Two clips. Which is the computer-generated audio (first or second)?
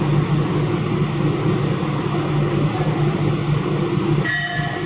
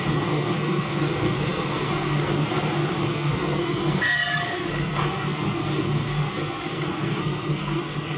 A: second